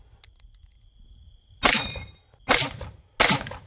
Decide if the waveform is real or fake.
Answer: real